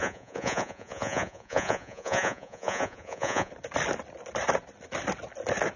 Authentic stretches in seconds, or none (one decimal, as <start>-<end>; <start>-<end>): 3.5-5.8